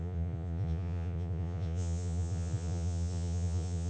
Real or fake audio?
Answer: fake